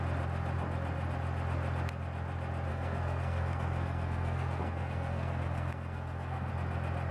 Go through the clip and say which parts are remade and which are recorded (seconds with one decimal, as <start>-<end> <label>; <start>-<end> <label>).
0.0-2.7 recorded; 2.7-6.5 remade; 6.5-7.1 recorded